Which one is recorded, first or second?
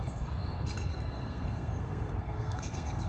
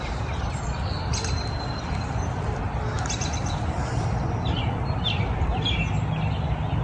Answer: second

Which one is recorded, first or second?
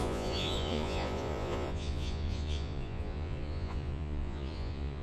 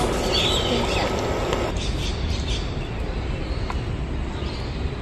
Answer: second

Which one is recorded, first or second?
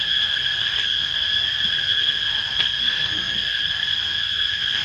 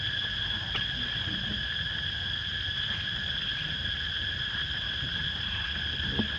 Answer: second